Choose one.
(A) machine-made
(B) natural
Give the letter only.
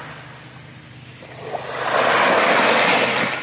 B